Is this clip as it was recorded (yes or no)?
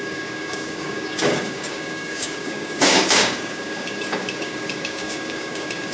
no